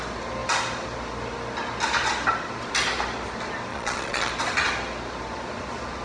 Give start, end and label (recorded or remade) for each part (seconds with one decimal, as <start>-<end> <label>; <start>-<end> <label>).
0.0-3.7 recorded; 3.7-4.3 remade; 4.3-6.0 recorded